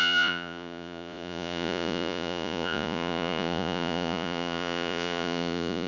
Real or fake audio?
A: fake